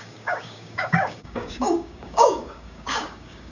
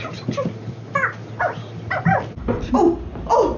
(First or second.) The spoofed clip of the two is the first